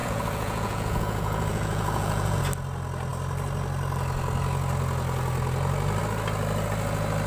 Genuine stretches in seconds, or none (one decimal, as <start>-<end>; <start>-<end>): 2.4-7.3